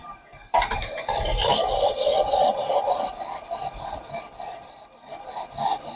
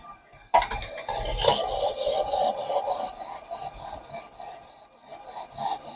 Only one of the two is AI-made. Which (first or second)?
first